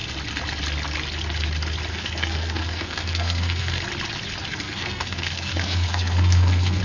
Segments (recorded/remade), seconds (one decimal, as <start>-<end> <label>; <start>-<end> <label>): 0.0-1.9 recorded; 1.9-3.8 remade; 3.8-4.5 recorded; 4.5-6.8 remade